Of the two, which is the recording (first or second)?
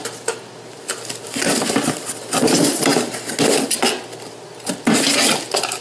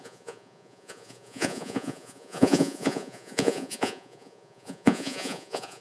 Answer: first